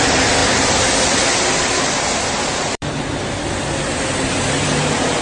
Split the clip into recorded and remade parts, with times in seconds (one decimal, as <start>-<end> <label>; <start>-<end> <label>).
0.0-0.4 recorded; 0.4-3.5 remade; 3.5-5.2 recorded